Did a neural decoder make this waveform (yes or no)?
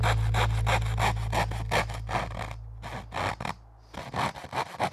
no